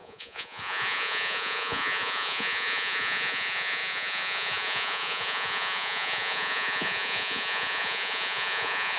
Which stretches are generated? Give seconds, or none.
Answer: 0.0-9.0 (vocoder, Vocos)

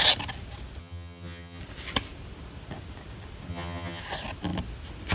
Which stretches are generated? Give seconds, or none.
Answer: 0.8-1.6 (vocoder, HiFi-GAN); 3.5-4.0

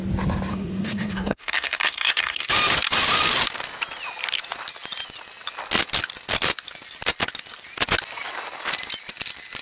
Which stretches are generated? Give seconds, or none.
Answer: 0.5-2.5 (codec, SNAC)

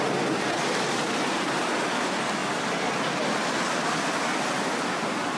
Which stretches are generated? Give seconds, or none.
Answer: none

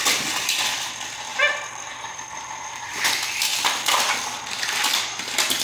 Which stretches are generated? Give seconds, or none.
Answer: 1.3-3.0 (vocoder, BigVGAN v2); 3.5-4.2

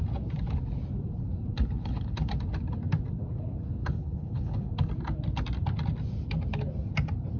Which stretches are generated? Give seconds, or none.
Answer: 1.5-2.3 (codec, HILCodec); 3.8-4.7

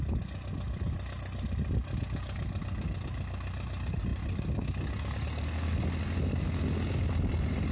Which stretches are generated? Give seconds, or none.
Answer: none

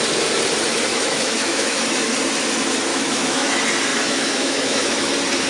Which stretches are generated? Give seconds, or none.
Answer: 0.9-1.9 (autoencoder, DAC-VAE); 2.9-3.5; 3.9-5.1